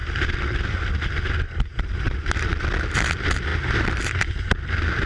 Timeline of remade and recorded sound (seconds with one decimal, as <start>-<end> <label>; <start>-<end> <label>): 0.0-5.1 recorded